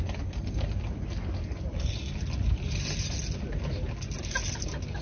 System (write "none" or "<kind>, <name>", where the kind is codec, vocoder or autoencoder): none